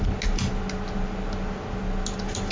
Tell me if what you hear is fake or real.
real